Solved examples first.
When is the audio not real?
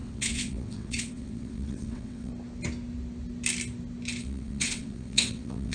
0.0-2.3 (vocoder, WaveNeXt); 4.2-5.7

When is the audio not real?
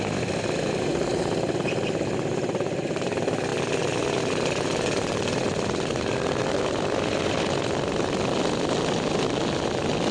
none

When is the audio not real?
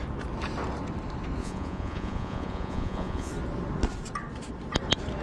1.4-3.3 (vocoder, Vocos)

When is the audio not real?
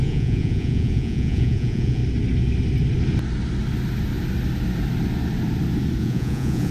0.0-2.0 (vocoder, Vocos); 6.0-6.7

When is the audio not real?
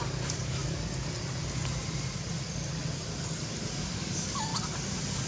0.0-0.6 (codec, DAC); 3.8-4.5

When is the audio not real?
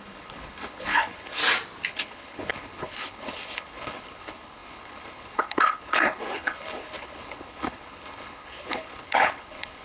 0.0-1.4 (codec, HILCodec); 1.9-9.8